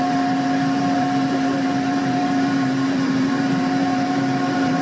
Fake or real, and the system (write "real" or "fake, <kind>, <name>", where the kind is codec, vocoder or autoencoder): fake, vocoder, BigVGAN v2